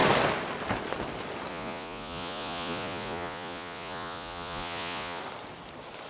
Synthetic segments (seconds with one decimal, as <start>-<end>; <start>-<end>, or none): 1.5-5.2